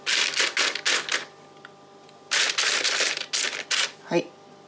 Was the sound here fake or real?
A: real